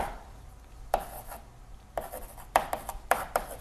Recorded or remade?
remade